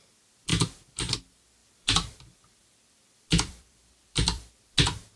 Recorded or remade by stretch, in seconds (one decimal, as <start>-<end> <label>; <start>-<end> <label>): 0.0-0.5 recorded; 0.5-1.1 remade; 1.1-1.6 recorded; 1.6-4.7 remade; 4.7-5.2 recorded